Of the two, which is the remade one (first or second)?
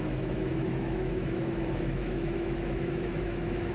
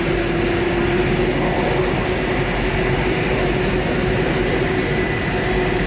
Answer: first